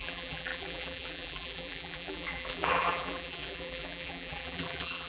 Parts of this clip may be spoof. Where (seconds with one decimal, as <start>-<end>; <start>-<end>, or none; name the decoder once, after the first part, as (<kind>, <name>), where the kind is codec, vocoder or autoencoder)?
0.0-5.1 (vocoder, BigVGAN v2)